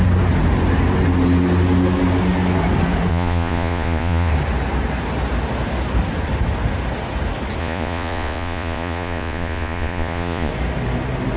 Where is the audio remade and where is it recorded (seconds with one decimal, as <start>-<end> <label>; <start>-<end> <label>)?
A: 0.0-3.1 recorded; 3.1-4.3 remade; 4.3-7.6 recorded; 7.6-10.5 remade; 10.5-11.4 recorded